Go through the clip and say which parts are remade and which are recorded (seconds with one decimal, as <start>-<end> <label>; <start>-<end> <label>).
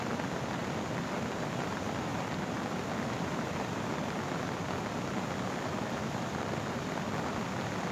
0.0-7.9 recorded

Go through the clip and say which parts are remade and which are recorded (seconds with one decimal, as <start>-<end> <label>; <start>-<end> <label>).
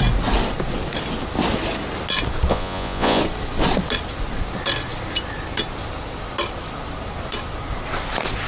0.0-2.5 recorded; 2.5-3.2 remade; 3.2-8.5 recorded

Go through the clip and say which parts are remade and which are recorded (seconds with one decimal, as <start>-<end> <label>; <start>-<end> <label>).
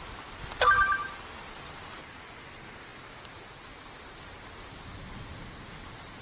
0.0-6.2 recorded